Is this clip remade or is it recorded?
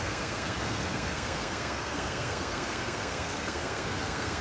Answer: remade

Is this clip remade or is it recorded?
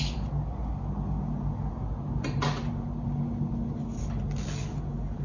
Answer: recorded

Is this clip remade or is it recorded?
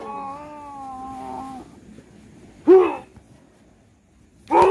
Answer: recorded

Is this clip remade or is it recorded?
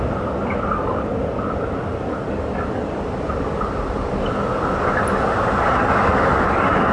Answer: recorded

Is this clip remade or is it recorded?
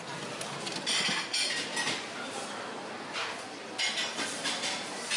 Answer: recorded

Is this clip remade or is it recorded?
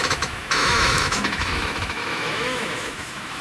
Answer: remade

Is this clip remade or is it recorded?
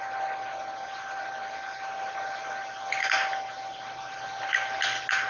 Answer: recorded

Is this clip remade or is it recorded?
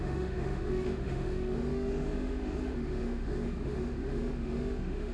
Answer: remade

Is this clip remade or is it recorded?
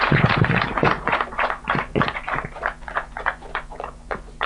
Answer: remade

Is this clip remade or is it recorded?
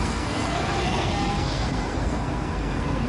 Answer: remade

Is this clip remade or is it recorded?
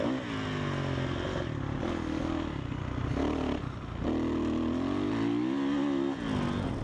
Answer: recorded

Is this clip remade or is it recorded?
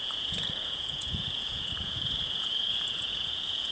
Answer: remade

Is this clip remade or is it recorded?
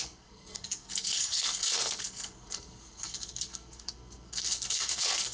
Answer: remade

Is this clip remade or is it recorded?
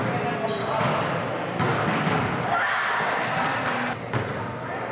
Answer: recorded